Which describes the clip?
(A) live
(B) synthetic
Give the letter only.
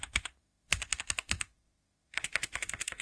B